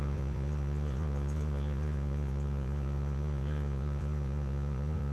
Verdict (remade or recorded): remade